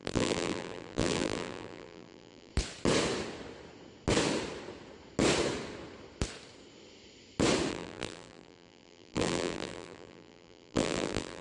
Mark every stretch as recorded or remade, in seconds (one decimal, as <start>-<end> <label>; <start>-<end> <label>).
0.0-2.5 remade; 2.5-7.7 recorded; 7.7-11.4 remade